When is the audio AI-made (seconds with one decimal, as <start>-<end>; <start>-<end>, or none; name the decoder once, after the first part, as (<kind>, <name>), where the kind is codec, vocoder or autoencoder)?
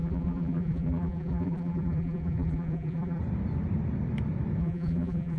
0.0-3.2 (vocoder, BigVGAN v2); 4.6-5.4